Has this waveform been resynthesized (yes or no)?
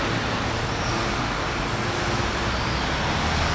no